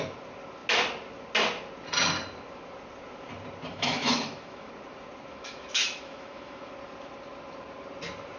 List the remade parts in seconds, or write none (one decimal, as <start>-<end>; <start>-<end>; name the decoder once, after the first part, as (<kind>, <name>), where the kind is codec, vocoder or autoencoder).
3.7-4.7 (autoencoder, DAC-VAE); 5.3-6.7